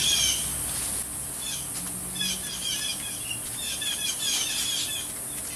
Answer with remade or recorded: recorded